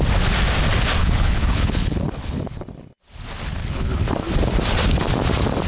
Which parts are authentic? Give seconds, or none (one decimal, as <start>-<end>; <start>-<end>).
0.0-1.0; 3.0-3.6; 4.1-5.7

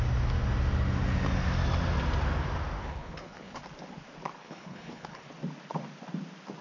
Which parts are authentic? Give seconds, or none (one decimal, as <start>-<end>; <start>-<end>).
0.0-2.8; 3.6-4.4; 5.3-6.6

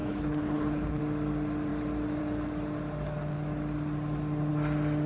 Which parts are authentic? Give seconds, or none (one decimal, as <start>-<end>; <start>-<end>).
1.0-5.1

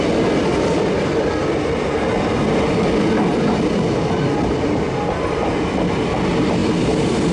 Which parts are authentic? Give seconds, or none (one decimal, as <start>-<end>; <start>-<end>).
0.0-7.3

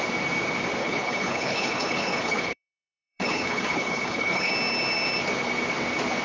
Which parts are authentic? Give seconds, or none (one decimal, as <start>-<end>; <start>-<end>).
0.0-0.8; 4.5-6.2

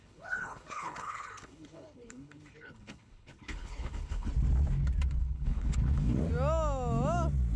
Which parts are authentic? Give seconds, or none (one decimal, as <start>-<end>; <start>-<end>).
4.3-5.2; 6.2-7.6

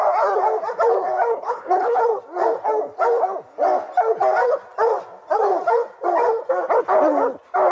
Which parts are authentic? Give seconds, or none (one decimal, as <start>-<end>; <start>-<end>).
0.0-1.3; 2.0-7.7

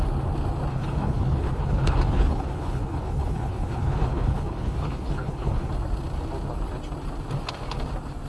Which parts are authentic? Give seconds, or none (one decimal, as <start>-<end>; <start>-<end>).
0.0-0.7; 5.7-8.3